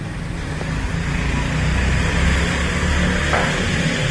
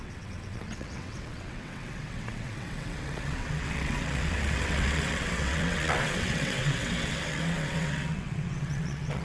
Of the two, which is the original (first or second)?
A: first